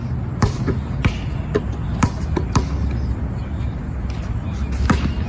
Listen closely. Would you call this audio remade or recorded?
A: recorded